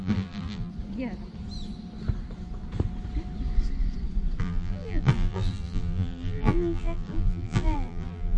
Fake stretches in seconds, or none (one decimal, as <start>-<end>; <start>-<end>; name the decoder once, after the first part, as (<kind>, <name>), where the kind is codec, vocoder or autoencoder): 0.0-0.7 (vocoder, BigVGAN v2); 4.4-8.4